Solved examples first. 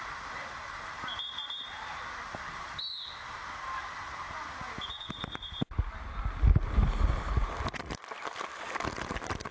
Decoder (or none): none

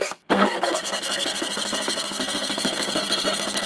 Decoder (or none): codec, SNAC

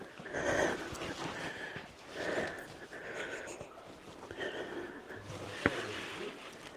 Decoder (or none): none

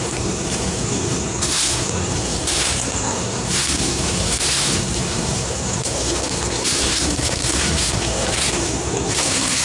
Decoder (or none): codec, SNAC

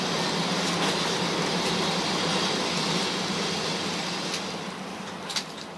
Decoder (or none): none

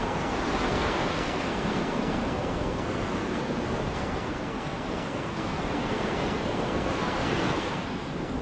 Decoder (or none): codec, SNAC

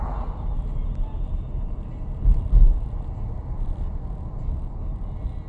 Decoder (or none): none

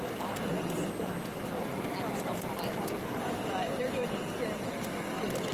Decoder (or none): none